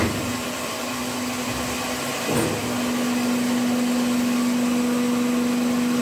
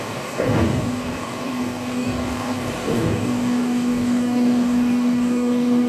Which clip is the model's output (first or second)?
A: second